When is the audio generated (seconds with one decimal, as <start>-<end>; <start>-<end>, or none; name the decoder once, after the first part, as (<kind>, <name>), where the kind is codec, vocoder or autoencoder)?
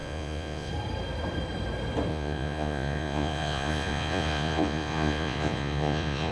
0.0-0.7 (vocoder, Vocos); 2.1-6.3